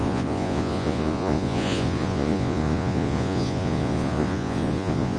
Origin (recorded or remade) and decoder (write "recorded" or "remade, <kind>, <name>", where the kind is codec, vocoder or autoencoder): remade, vocoder, Vocos